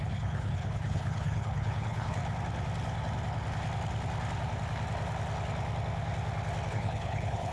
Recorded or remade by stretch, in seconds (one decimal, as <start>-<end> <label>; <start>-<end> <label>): 0.0-2.2 remade; 2.2-6.7 recorded; 6.7-7.5 remade

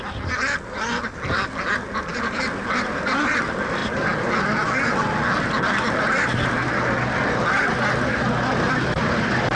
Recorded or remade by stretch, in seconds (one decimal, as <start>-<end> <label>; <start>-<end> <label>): 0.0-9.6 recorded

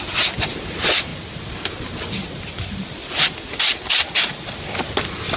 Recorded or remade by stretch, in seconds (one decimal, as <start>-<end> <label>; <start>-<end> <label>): 0.0-5.4 recorded

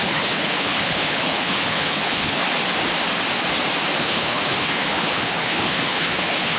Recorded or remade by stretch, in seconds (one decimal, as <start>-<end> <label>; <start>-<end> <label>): 0.0-2.4 remade; 2.4-4.0 recorded; 4.0-6.6 remade

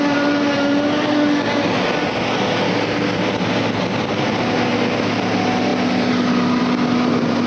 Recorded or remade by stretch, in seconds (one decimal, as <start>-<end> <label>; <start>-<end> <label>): 0.0-7.5 recorded